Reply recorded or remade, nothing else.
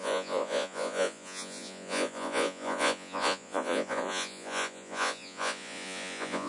remade